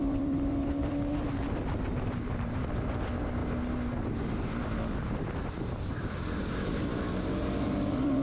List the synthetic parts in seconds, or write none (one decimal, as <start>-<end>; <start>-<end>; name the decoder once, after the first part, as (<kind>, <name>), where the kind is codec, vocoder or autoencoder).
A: 0.0-3.4 (vocoder, BigVGAN v2); 5.4-8.2

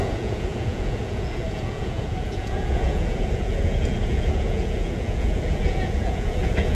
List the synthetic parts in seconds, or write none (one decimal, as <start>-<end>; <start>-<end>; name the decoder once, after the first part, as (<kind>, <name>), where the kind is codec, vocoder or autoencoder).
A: 0.0-6.7 (vocoder, Vocos)

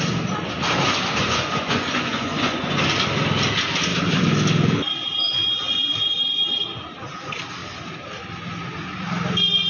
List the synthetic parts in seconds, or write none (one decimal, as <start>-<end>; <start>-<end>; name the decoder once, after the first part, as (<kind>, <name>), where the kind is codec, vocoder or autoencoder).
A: 1.2-2.8 (vocoder, Vocos)

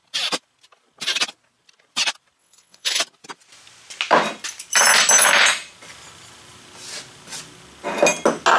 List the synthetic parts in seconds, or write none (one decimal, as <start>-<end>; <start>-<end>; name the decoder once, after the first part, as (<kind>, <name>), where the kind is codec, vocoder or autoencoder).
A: 2.4-3.0 (vocoder, WaveNeXt)

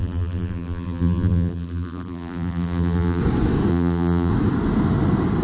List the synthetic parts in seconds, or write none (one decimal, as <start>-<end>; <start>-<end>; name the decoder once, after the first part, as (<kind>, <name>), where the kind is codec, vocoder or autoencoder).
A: 0.0-3.2 (vocoder, BigVGAN v2); 3.7-4.3

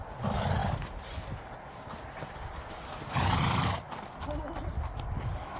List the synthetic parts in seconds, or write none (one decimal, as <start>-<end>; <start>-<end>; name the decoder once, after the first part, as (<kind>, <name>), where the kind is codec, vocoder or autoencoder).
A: 0.6-4.0 (vocoder, BigVGAN v2)

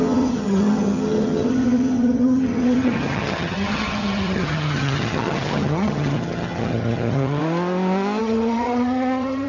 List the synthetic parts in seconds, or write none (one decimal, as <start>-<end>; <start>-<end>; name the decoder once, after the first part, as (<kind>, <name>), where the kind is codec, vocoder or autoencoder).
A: 0.0-7.4 (vocoder, HiFi-GAN); 8.2-9.5

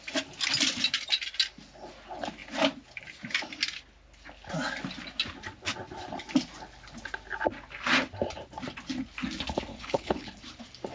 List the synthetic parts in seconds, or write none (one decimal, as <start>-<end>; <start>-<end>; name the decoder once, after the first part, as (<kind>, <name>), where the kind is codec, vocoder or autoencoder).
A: 9.7-10.4 (codec, HILCodec)